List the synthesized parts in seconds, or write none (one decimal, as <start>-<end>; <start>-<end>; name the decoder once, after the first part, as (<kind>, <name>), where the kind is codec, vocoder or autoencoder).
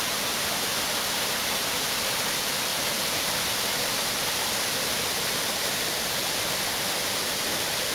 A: none